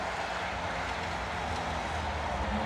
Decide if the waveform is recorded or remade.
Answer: recorded